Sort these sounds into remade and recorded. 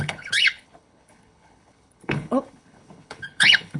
remade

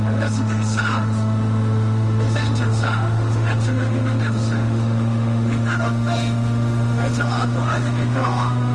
remade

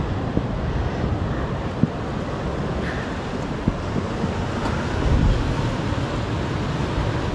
recorded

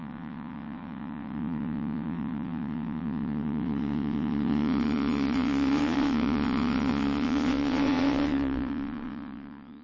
remade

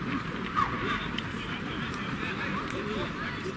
remade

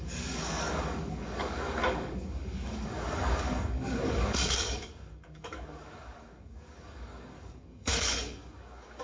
remade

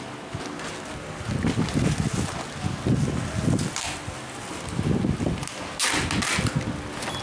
recorded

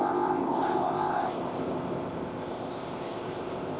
remade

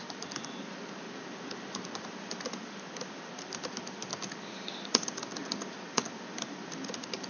remade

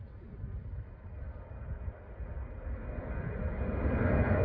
recorded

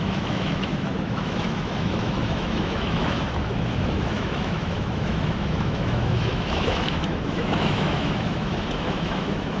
remade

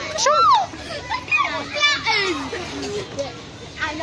recorded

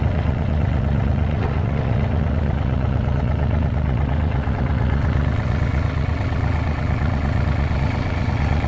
remade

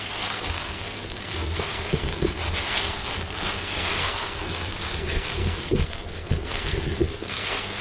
remade